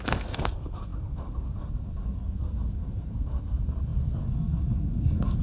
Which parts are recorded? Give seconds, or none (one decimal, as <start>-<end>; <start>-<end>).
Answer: none